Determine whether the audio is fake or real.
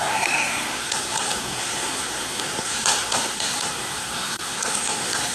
fake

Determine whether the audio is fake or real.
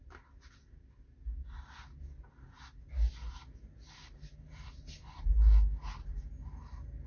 real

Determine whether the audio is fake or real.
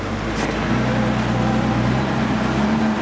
real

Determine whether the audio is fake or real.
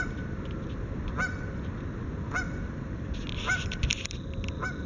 real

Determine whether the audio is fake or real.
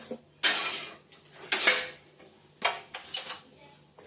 real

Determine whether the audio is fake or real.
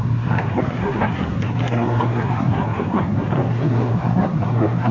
fake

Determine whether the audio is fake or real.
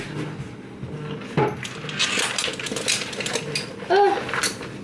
real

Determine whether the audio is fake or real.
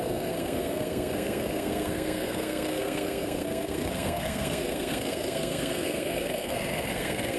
fake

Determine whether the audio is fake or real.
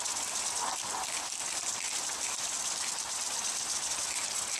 real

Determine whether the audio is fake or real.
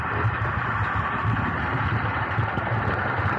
real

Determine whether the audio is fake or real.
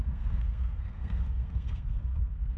fake